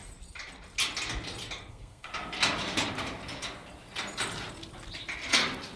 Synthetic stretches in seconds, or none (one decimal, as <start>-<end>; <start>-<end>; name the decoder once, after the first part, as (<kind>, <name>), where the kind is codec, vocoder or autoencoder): 1.7-2.1 (codec, SNAC)